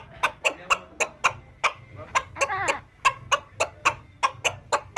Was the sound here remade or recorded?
recorded